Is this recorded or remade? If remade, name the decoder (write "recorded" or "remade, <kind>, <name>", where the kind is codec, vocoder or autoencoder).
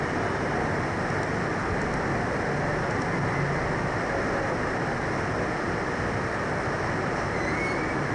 recorded